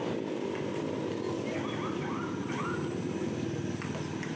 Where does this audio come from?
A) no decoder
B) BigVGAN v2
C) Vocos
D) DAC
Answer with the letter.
A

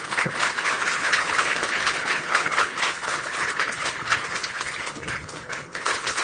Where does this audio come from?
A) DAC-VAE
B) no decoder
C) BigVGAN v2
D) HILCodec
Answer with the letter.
D